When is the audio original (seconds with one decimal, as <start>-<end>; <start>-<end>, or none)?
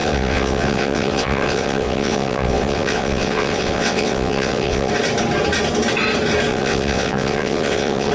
4.9-6.5